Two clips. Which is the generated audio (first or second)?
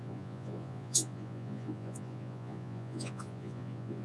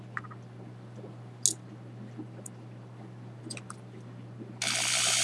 first